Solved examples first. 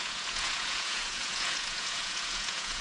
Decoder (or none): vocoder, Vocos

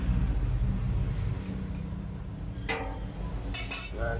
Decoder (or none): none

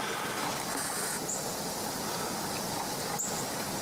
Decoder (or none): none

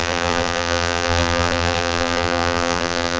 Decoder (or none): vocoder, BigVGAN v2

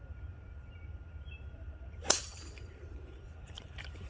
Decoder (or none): vocoder, BigVGAN v2